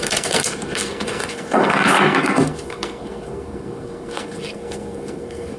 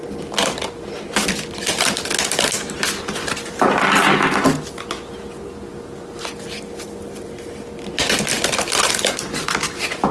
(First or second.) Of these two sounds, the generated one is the first